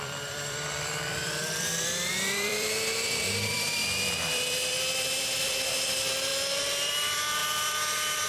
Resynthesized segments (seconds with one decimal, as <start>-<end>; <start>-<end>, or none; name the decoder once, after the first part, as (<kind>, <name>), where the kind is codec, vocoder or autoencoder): 0.0-8.3 (vocoder, BigVGAN v2)